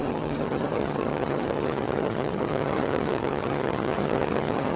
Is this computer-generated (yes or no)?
yes